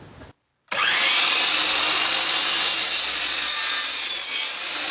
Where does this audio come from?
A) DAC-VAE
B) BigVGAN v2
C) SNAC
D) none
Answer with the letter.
D